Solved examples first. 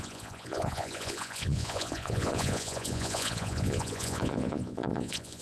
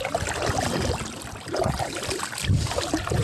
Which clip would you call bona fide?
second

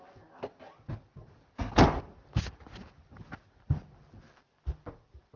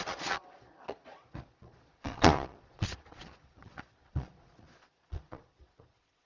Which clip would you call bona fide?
first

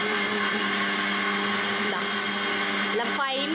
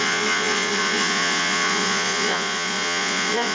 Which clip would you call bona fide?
first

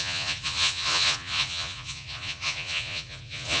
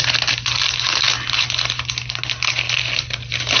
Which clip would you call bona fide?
second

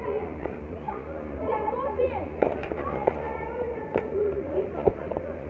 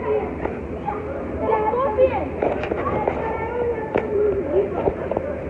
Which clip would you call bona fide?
second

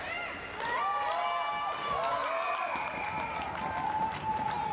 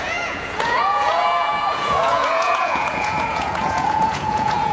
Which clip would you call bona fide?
first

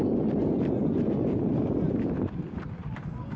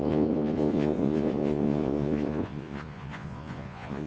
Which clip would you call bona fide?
first